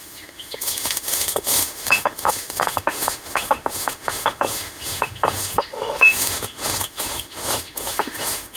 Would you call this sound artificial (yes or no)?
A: yes